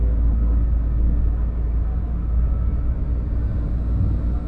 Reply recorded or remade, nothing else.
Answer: recorded